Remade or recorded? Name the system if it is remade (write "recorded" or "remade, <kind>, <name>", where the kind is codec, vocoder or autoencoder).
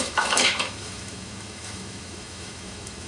remade, autoencoder, DAC-VAE